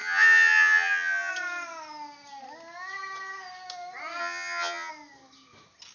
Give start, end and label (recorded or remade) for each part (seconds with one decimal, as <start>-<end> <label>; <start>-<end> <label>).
0.0-1.3 remade; 1.3-4.2 recorded; 4.2-4.9 remade; 4.9-5.9 recorded